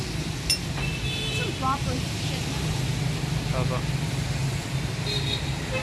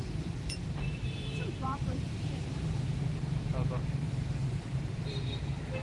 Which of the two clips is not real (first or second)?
second